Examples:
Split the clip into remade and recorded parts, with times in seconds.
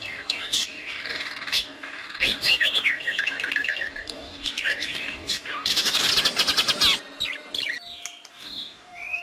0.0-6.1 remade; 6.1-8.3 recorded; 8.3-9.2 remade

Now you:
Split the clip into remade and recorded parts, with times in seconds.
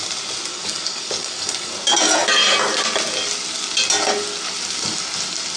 0.0-0.5 recorded; 0.5-1.7 remade; 1.7-5.6 recorded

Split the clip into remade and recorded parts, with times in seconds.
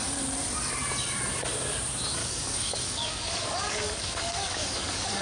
0.0-2.2 recorded; 2.2-5.2 remade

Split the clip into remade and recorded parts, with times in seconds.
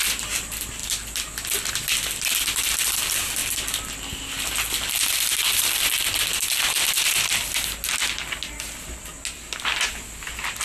0.0-10.6 recorded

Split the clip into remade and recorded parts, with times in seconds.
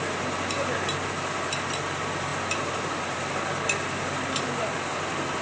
0.0-5.4 recorded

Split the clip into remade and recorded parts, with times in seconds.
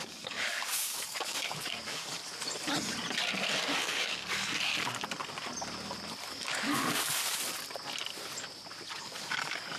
0.0-2.2 remade; 2.2-3.6 recorded; 3.6-4.7 remade; 4.7-6.3 recorded; 6.3-7.4 remade; 7.4-9.0 recorded; 9.0-9.8 remade